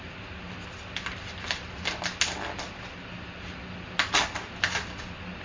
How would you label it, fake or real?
real